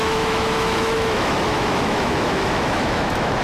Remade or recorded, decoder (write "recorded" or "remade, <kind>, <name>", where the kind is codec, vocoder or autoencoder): remade, autoencoder, DAC-VAE